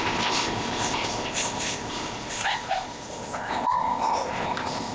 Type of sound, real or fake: fake